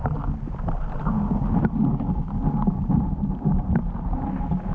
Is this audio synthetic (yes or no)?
no